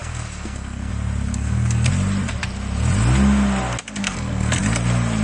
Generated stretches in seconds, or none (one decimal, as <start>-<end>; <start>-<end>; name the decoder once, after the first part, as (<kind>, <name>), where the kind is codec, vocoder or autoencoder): 0.0-0.9 (codec, SNAC); 1.3-1.9; 4.0-4.6